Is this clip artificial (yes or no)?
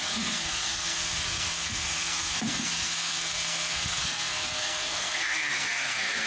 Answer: yes